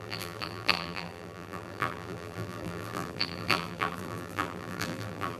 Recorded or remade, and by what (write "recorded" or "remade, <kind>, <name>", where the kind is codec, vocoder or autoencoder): remade, vocoder, BigVGAN v2